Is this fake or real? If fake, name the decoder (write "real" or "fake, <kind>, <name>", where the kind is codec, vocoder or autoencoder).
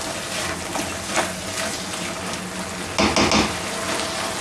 real